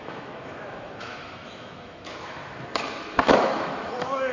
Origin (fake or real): fake